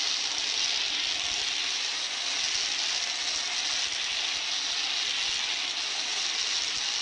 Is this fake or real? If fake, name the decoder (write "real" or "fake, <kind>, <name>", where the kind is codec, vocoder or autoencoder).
real